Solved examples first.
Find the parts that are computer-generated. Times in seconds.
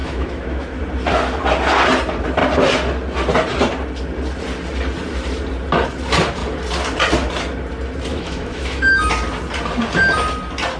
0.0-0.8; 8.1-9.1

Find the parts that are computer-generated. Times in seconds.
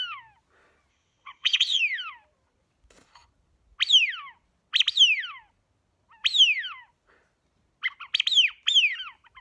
0.9-1.8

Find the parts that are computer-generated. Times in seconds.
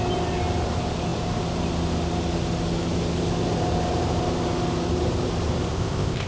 5.7-6.3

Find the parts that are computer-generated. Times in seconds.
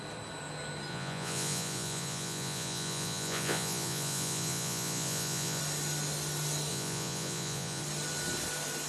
0.9-5.6; 6.7-7.8